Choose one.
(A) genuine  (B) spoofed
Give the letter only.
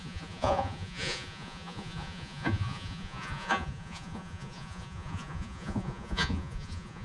B